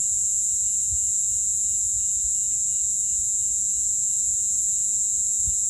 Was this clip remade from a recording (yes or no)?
no